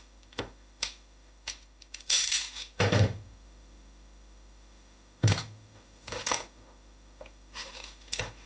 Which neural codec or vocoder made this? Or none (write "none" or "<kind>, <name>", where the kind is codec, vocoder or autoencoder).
autoencoder, DAC-VAE